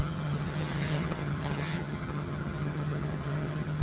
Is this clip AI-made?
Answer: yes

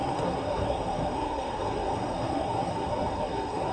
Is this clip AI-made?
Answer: yes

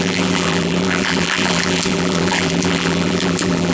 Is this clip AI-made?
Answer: yes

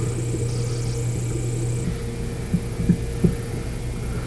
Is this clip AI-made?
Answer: no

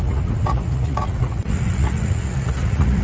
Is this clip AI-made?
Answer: yes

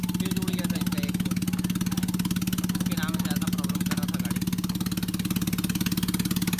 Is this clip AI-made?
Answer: no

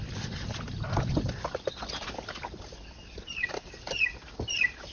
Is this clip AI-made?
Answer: no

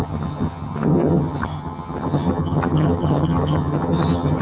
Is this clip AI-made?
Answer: yes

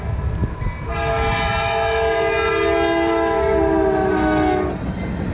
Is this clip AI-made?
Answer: no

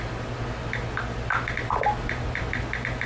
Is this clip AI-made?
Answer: no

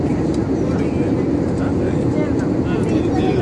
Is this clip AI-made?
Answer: no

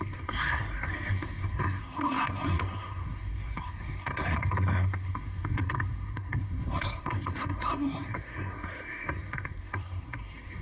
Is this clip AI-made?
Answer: yes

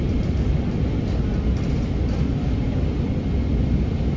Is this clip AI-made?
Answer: no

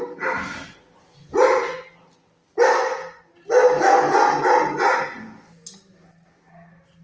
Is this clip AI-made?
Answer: no